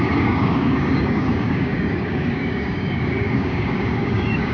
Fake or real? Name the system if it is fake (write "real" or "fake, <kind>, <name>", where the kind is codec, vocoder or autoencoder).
fake, codec, DAC